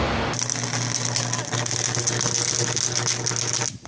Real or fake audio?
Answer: real